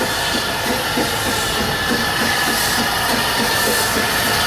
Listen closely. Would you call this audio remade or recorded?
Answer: recorded